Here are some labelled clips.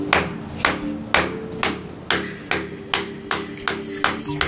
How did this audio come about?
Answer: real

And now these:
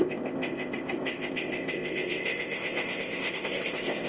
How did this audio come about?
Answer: fake